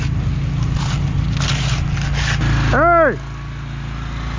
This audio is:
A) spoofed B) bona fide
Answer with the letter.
B